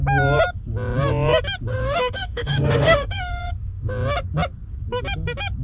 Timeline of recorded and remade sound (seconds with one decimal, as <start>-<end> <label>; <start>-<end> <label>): 0.0-1.7 recorded; 1.7-3.9 remade; 3.9-5.6 recorded